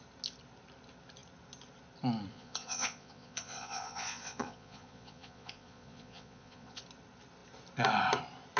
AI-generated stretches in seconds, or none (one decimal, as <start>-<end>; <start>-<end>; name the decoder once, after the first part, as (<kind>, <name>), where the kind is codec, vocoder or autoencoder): 2.3-6.8 (vocoder, Vocos)